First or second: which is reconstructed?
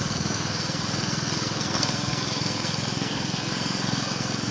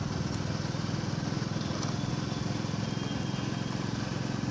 first